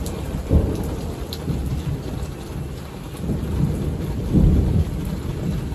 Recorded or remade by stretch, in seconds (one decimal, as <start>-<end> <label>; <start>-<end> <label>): 0.0-5.7 remade